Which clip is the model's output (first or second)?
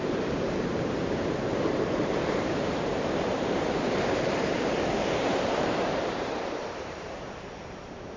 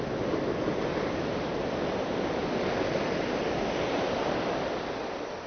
first